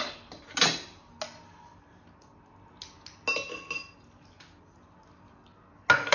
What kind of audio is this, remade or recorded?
recorded